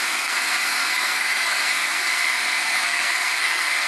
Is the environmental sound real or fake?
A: fake